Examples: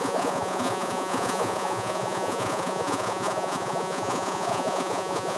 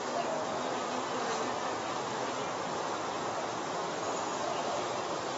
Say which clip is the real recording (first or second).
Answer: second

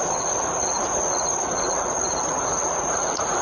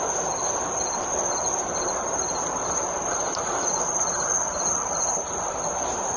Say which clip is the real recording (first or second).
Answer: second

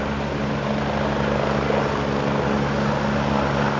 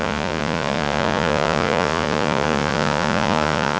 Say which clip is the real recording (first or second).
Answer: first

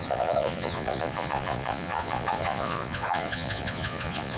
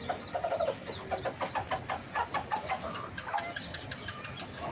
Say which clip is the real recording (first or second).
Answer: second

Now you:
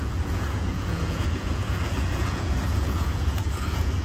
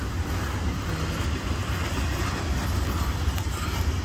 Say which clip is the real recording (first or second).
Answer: second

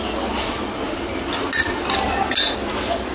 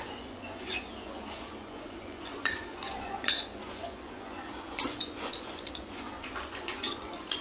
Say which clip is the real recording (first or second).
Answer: first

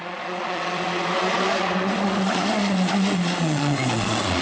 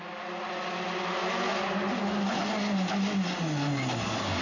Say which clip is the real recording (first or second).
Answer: second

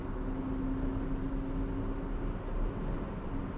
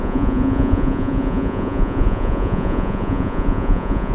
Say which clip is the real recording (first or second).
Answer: first